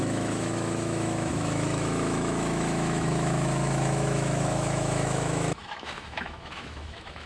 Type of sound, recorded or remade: remade